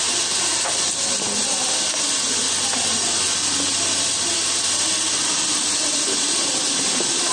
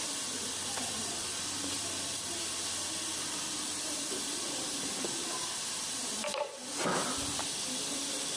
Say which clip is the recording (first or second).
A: first